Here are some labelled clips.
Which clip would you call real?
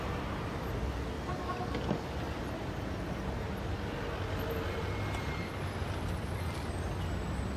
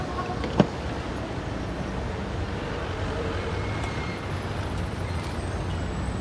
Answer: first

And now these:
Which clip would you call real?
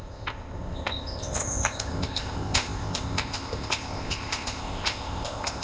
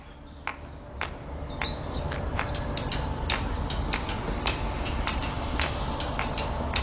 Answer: second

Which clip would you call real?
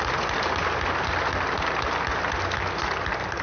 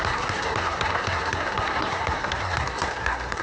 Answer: first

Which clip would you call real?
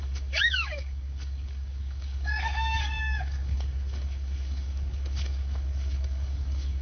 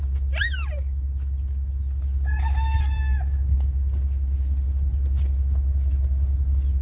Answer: second